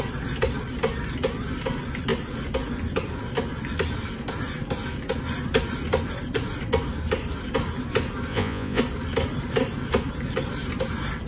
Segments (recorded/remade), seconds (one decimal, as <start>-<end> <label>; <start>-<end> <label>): 0.0-8.3 recorded; 8.3-8.8 remade; 8.8-11.3 recorded